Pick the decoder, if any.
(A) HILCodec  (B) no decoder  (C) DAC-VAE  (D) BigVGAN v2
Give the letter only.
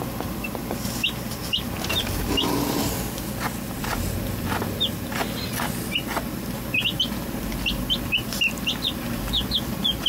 B